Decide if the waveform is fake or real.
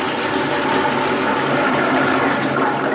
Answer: real